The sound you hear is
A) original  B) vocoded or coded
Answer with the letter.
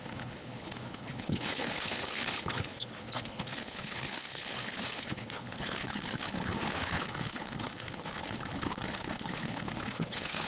B